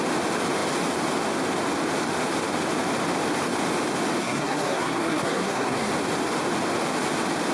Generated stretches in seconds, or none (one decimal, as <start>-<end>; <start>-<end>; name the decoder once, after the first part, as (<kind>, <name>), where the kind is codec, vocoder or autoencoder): 4.2-5.9 (codec, SNAC)